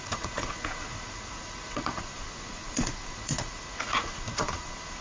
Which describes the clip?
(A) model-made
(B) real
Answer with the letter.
A